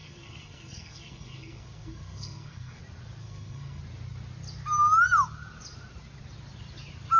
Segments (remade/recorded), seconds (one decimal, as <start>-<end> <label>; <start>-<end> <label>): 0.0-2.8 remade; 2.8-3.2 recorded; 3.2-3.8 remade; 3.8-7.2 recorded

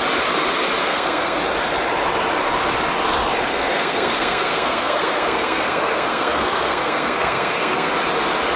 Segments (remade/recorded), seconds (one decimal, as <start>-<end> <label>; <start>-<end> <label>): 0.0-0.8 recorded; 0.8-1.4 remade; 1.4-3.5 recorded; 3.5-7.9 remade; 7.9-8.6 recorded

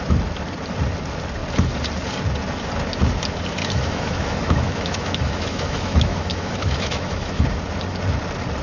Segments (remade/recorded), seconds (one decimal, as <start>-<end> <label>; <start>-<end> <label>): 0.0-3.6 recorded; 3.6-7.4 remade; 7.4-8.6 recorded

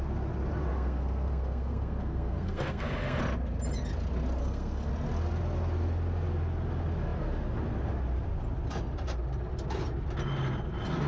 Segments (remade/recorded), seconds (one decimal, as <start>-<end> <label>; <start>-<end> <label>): 0.0-0.7 recorded; 0.7-3.2 remade; 3.2-4.4 recorded; 4.4-4.9 remade; 4.9-11.1 recorded